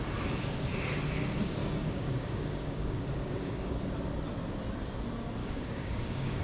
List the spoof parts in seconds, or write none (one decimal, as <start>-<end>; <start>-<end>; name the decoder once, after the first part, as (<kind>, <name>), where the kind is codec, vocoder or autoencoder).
1.6-3.7 (codec, DAC); 5.4-6.4